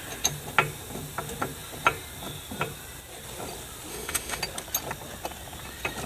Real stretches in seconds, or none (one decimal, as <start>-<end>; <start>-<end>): 0.0-3.9; 4.4-6.1

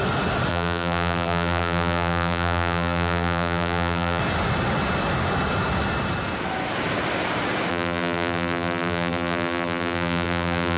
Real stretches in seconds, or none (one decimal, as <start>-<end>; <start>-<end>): 0.0-0.5; 4.2-7.7

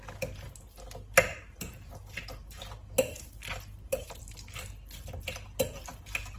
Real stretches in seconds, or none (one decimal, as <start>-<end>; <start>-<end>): 0.0-1.3; 4.2-6.4

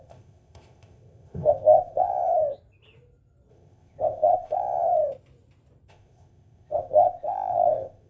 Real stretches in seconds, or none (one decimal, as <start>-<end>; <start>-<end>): 2.1-3.5; 4.6-5.9

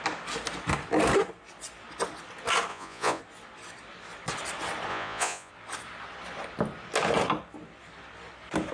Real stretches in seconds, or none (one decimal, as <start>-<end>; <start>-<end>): 0.0-2.7; 3.2-4.9; 5.5-8.7

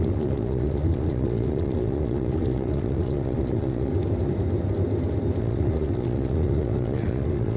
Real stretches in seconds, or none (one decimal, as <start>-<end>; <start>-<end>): 3.9-5.4

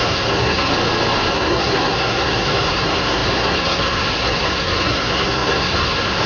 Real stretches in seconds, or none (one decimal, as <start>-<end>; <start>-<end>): 0.7-1.3